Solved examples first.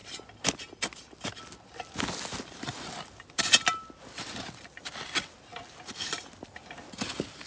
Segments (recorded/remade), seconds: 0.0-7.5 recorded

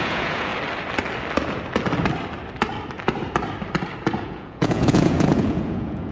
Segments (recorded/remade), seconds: 0.0-0.5 remade; 0.5-4.2 recorded; 4.2-6.1 remade